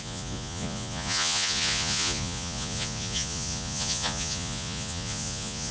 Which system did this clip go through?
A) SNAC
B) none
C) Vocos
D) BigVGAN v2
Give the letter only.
C